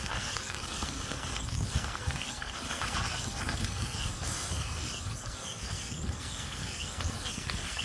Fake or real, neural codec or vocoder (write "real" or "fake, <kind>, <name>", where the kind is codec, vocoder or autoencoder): fake, codec, SNAC